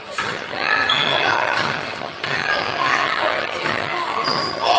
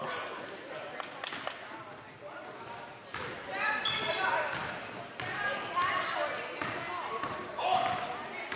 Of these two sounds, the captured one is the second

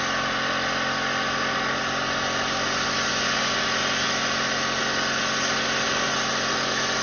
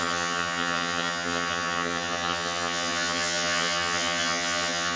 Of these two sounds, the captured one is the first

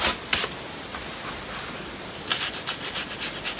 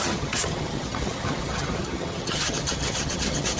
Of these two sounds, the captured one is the first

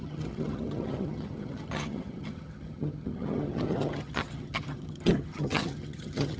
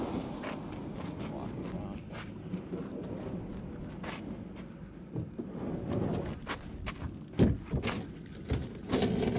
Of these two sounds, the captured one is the second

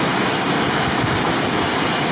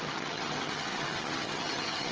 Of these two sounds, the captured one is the first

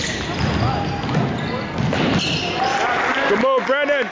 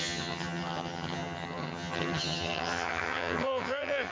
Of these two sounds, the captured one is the first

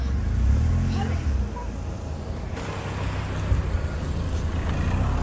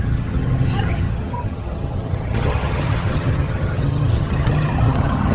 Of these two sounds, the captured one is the first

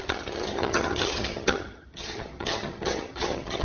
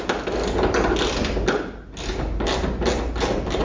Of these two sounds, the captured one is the second